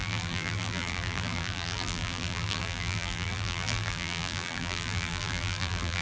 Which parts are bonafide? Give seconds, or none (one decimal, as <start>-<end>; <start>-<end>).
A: none